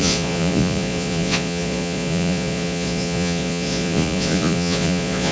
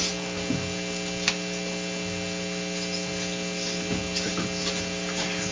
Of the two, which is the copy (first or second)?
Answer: first